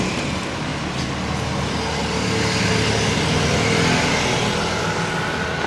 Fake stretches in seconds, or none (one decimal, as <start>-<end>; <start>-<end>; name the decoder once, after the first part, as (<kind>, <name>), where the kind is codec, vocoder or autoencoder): none